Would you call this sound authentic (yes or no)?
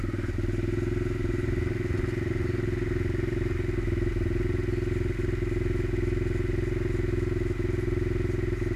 yes